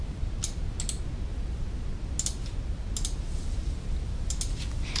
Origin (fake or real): real